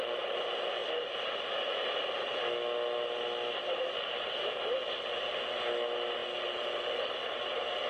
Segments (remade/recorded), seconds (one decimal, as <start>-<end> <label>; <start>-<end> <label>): 0.0-7.9 recorded